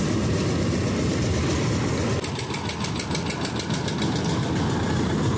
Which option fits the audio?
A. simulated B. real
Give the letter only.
B